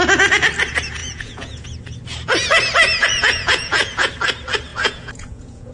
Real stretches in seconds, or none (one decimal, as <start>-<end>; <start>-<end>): 0.0-1.0; 1.7-3.0; 4.1-4.7